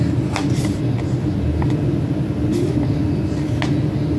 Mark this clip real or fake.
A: real